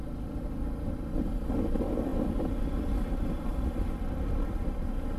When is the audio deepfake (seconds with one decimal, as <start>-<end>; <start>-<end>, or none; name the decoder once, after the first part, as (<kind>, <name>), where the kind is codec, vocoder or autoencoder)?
none